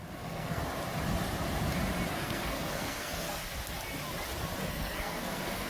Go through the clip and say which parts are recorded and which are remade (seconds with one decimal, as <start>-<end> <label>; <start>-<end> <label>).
0.0-0.6 remade; 0.6-2.1 recorded; 2.1-3.4 remade; 3.4-4.7 recorded; 4.7-5.7 remade